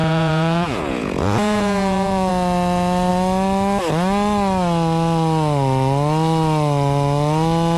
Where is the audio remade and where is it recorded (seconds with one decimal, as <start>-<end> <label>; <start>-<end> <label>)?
0.0-2.3 remade; 2.3-7.8 recorded